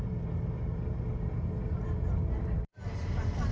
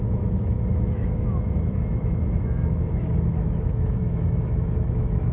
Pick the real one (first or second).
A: first